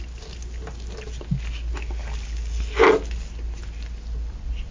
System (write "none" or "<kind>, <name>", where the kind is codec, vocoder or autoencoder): none